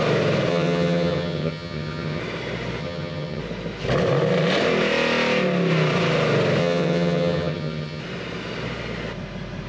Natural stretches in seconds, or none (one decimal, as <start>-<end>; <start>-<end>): 0.0-0.5; 2.2-2.8; 3.4-6.6; 8.0-9.7